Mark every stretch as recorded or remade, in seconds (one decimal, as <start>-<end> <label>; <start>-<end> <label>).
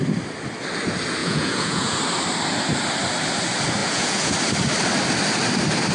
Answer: 0.0-1.2 recorded; 1.2-2.0 remade; 2.0-3.8 recorded; 3.8-4.3 remade; 4.3-5.9 recorded